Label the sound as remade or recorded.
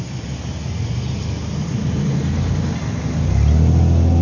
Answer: recorded